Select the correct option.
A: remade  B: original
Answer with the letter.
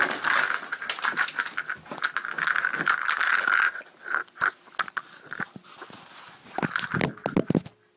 B